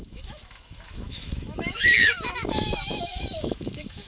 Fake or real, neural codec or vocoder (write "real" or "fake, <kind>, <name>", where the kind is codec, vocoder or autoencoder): fake, autoencoder, DAC-VAE